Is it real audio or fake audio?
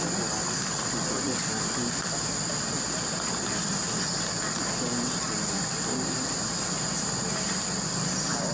real